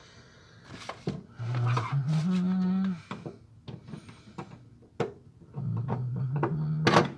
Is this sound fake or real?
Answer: real